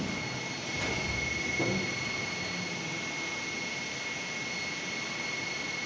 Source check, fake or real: real